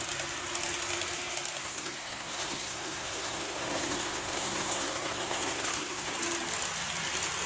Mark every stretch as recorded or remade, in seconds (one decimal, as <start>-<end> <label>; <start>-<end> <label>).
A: 0.0-1.6 recorded; 1.6-6.1 remade; 6.1-7.5 recorded